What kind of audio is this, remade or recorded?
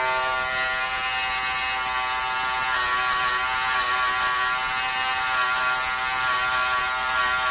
recorded